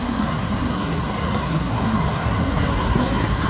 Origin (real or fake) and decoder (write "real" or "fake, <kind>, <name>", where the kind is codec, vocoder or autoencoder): fake, codec, SNAC